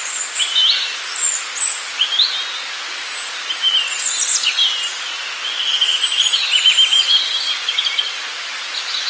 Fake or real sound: real